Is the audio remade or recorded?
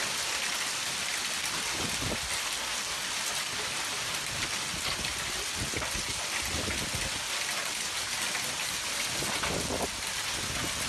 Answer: recorded